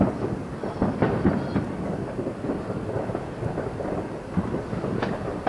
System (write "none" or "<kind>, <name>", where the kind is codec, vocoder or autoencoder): none